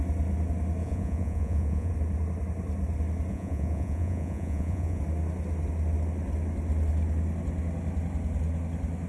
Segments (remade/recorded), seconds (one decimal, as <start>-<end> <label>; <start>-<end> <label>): 0.0-0.8 recorded; 0.8-1.9 remade; 1.9-3.3 recorded; 3.3-5.0 remade; 5.0-9.1 recorded